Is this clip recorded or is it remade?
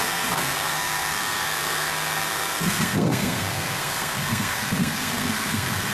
remade